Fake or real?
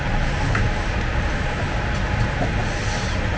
real